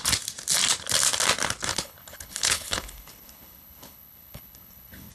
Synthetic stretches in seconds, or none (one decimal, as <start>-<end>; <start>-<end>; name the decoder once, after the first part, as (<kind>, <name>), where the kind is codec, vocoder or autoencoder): 1.7-5.1 (codec, HILCodec)